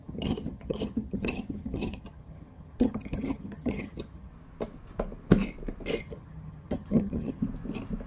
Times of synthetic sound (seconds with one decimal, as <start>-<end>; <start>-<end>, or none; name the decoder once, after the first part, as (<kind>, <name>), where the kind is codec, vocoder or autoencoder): 0.0-4.3 (vocoder, HiFi-GAN); 6.0-7.4